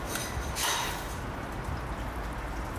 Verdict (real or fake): real